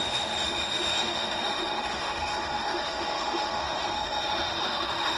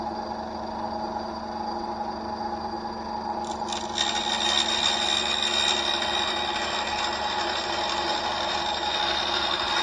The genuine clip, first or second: second